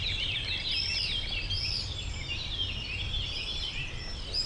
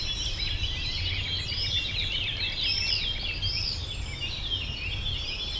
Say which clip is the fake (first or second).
first